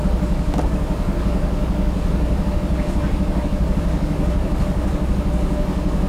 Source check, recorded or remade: remade